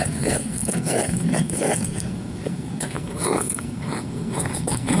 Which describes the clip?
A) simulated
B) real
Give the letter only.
A